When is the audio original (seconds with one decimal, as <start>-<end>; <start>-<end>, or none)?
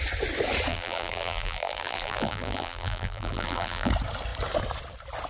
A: 0.0-0.7; 3.9-5.3